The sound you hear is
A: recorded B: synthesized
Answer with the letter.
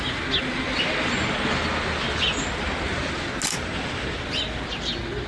A